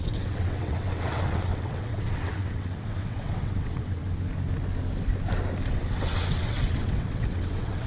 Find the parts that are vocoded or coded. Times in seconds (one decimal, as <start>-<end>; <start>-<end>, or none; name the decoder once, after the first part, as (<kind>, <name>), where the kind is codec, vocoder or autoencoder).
0.0-4.0 (vocoder, WaveNeXt); 5.7-7.9

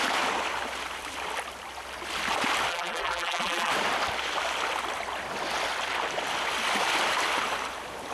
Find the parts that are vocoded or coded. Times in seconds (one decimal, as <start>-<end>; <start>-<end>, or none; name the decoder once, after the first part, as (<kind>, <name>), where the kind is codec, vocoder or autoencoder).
2.7-3.7 (vocoder, BigVGAN v2)